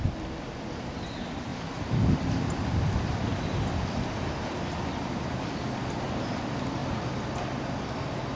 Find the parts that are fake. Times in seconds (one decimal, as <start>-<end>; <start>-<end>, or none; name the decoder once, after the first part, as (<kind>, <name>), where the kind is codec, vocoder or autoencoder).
1.5-2.0 (vocoder, BigVGAN v2); 6.8-7.3